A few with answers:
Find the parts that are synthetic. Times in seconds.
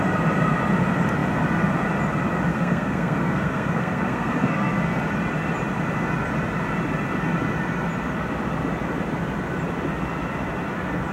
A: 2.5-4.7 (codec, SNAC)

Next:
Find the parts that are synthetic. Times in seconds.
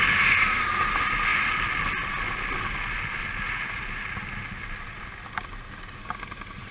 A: none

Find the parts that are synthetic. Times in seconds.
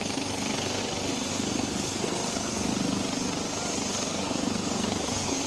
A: 0.0-0.8 (codec, SNAC); 1.3-2.7; 3.9-5.5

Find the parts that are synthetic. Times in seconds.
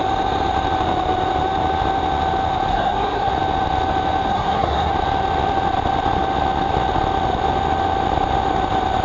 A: 2.7-3.3 (codec, SNAC); 4.3-4.9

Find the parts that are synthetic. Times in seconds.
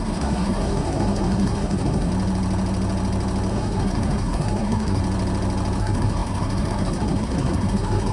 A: 0.0-2.1 (codec, SNAC); 3.5-5.0; 5.8-8.1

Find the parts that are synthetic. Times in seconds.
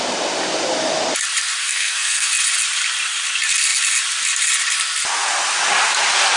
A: 1.6-2.3 (codec, SNAC)